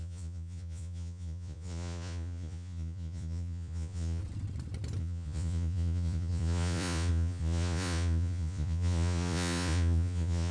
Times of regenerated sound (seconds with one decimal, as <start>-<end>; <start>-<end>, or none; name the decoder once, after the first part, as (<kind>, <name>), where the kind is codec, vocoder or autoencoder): 0.0-4.2 (vocoder, Vocos); 5.0-10.5